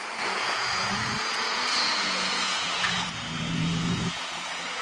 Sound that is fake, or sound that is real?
fake